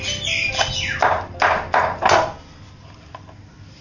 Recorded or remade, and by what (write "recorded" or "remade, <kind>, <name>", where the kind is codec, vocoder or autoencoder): recorded